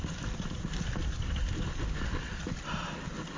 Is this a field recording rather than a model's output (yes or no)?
yes